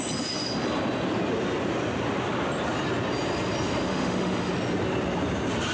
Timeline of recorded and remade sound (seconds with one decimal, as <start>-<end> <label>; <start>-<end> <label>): 0.0-3.9 recorded; 3.9-4.5 remade; 4.5-5.7 recorded